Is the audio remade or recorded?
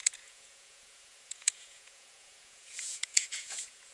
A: remade